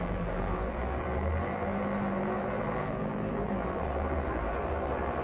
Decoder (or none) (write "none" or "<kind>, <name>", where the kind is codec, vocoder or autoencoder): vocoder, BigVGAN v2